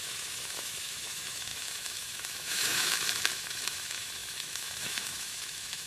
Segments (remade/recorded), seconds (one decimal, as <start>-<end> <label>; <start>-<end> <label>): 0.0-5.9 remade